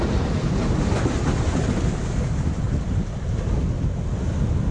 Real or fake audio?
real